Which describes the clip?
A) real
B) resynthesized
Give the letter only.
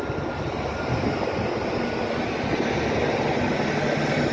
A